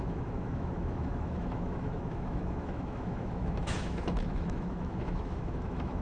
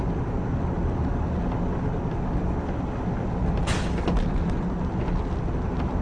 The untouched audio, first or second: second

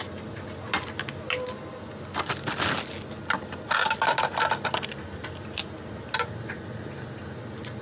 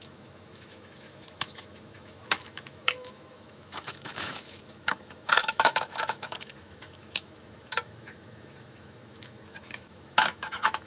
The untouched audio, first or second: first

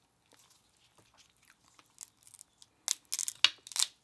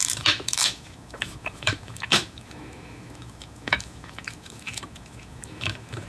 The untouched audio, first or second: first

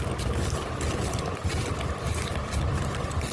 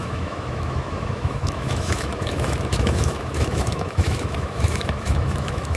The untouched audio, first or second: first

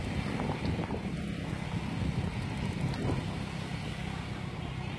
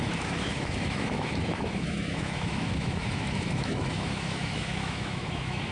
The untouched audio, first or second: first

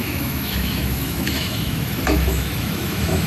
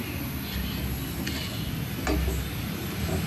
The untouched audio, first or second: second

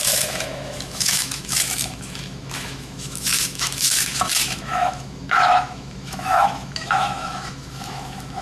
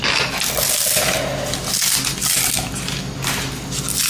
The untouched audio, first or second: second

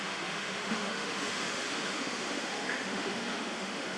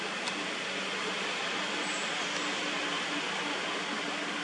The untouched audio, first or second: second